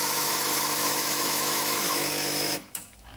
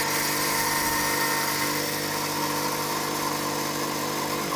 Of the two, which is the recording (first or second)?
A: second